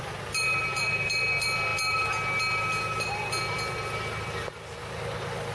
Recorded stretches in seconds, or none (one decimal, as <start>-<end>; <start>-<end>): 0.0-5.5